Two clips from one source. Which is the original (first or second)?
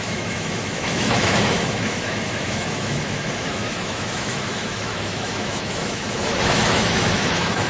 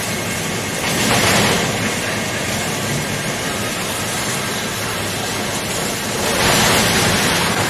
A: second